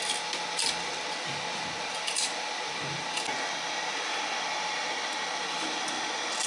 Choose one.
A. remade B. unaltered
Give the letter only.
B